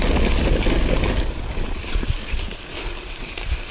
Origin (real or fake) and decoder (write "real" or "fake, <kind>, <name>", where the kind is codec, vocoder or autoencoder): real